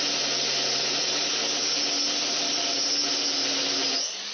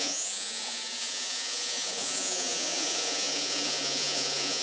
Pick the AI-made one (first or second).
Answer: second